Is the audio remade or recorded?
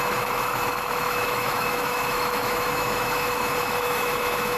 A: remade